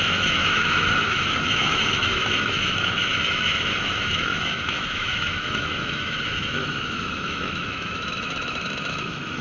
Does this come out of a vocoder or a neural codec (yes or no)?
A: yes